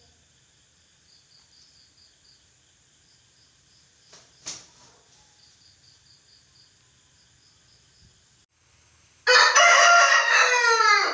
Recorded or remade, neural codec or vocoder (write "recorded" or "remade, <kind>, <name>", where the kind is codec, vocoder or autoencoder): recorded